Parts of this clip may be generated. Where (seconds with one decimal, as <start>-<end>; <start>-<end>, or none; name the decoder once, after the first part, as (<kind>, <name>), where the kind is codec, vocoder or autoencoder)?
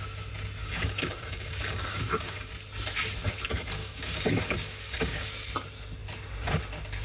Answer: 0.6-2.5 (codec, DAC); 3.8-5.3